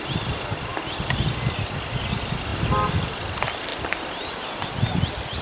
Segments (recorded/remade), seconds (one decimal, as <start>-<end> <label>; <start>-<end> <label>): 0.0-3.7 recorded; 3.7-5.4 remade